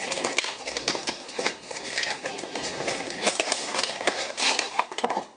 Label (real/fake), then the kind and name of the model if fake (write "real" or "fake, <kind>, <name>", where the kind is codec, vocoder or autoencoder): fake, codec, SNAC